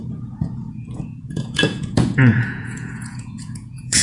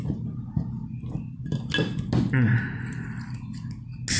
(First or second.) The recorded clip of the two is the second